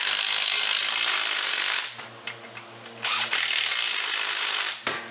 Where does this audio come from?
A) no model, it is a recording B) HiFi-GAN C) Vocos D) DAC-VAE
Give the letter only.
A